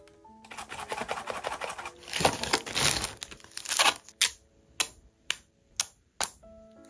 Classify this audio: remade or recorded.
recorded